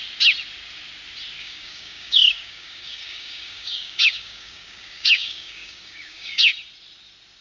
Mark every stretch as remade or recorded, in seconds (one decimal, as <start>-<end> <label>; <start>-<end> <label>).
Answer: 0.0-1.4 recorded; 1.4-6.5 remade; 6.5-7.4 recorded